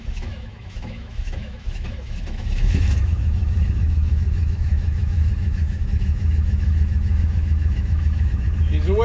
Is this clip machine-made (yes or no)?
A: yes